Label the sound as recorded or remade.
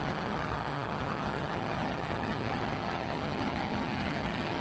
remade